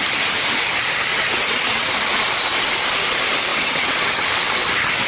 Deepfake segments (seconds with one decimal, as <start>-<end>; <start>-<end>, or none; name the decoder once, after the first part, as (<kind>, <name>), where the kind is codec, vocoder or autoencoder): 1.1-1.9 (vocoder, WaveNeXt); 3.5-4.3